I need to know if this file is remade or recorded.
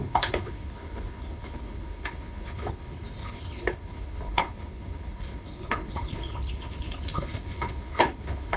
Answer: remade